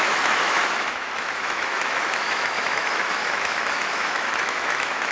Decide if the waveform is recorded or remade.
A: remade